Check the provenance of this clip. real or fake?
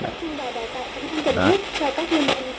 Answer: real